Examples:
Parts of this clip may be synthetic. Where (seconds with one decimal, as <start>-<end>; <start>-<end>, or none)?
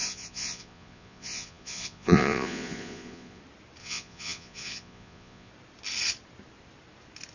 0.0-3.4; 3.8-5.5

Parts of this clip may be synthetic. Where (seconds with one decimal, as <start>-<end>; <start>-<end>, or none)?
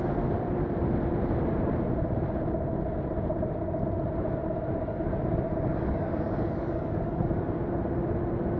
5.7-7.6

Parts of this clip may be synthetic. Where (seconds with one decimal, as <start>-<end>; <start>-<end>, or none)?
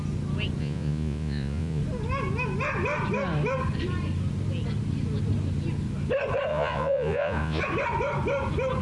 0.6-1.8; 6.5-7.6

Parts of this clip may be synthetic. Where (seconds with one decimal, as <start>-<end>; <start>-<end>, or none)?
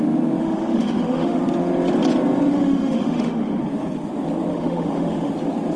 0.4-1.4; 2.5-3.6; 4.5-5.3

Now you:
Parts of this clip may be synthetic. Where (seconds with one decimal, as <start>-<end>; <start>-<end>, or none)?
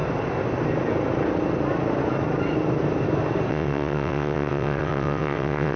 3.5-5.8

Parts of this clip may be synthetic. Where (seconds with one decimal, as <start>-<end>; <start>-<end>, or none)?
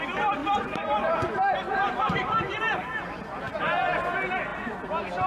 0.4-1.3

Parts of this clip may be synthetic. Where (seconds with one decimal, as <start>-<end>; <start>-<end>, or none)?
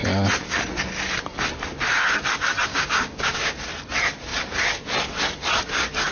2.7-3.5